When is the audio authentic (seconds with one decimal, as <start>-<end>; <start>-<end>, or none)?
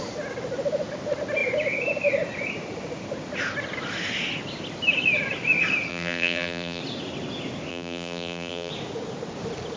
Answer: 0.0-5.9; 6.8-7.7; 8.7-9.8